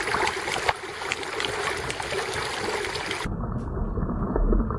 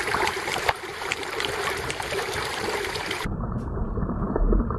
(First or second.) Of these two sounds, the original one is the first